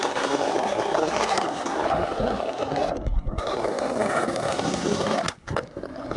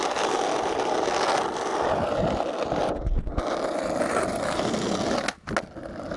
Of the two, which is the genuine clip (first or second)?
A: second